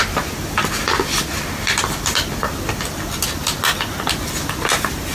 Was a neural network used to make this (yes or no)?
no